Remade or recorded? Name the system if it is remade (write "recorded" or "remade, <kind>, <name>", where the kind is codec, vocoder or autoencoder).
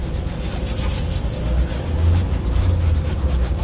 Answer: recorded